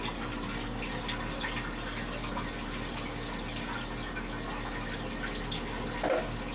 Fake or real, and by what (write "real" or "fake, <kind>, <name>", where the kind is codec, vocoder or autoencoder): real